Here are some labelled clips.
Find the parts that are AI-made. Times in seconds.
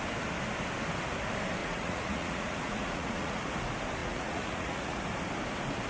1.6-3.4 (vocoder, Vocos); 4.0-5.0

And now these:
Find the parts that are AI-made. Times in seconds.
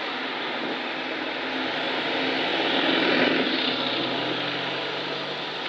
none